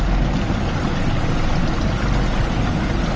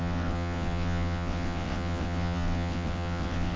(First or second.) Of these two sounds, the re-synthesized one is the second